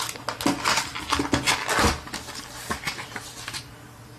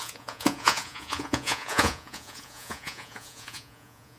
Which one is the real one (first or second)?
first